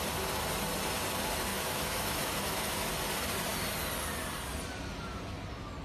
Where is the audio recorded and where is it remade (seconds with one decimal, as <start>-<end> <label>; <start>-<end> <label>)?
0.0-1.5 recorded; 1.5-2.9 remade; 2.9-5.8 recorded